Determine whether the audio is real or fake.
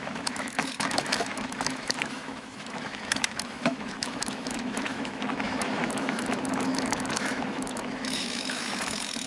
fake